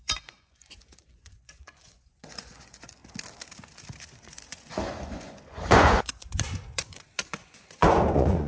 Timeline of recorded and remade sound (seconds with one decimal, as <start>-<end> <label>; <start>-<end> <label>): 0.0-3.0 remade; 3.0-4.0 recorded; 4.0-8.5 remade